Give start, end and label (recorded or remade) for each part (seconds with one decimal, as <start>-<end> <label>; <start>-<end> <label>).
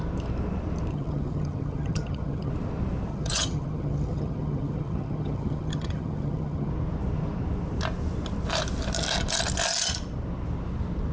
0.0-0.9 recorded; 0.9-2.5 remade; 2.5-3.1 recorded; 3.1-6.7 remade; 6.7-11.1 recorded